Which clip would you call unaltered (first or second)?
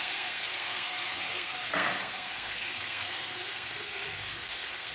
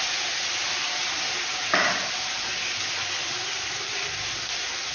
second